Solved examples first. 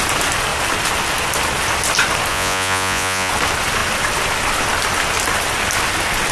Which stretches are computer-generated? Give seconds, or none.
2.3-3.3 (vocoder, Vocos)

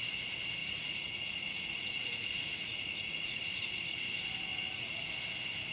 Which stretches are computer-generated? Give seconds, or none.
0.6-4.0 (vocoder, Vocos); 4.5-5.1

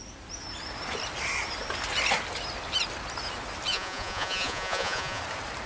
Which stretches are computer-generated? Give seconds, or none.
3.7-5.2 (vocoder, Vocos)

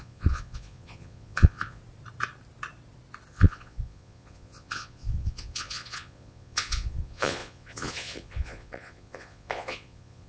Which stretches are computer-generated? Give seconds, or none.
0.0-1.8 (vocoder, Vocos); 3.3-10.3

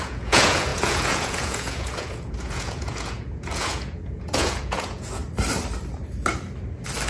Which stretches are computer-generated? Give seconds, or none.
0.0-5.2 (vocoder, Vocos)

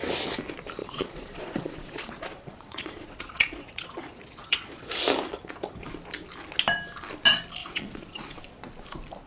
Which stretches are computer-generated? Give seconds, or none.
0.8-4.9 (vocoder, Vocos); 7.6-8.4

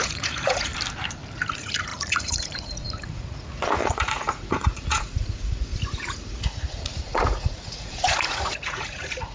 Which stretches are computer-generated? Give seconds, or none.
0.0-0.7 (vocoder, Vocos); 1.5-9.3